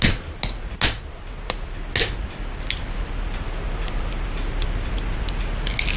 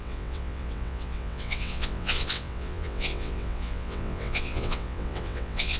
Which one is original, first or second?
first